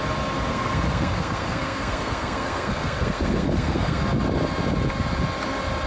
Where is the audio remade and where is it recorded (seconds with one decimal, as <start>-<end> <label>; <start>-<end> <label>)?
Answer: 0.0-0.5 recorded; 0.5-4.0 remade; 4.0-5.9 recorded